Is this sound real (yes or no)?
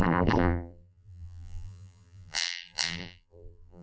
no